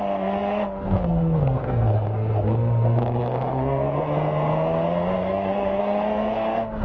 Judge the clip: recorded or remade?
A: remade